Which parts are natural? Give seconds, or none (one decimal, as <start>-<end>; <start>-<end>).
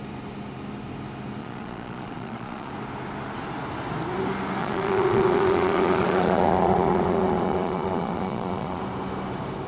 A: 0.0-1.4; 2.7-4.6; 8.8-9.7